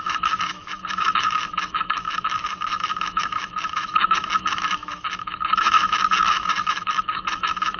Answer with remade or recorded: remade